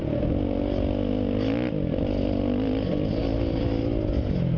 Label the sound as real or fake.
real